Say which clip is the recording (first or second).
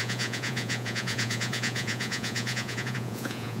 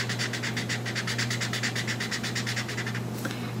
second